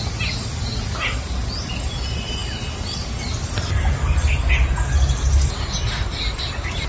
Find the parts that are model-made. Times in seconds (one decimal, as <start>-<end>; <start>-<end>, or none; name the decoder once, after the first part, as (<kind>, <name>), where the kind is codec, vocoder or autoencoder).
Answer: none